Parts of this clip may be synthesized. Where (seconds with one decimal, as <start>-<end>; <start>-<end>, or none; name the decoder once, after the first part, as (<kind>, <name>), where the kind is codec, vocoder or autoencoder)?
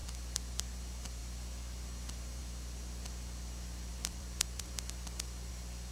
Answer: 0.0-0.6 (vocoder, BigVGAN v2); 3.9-5.5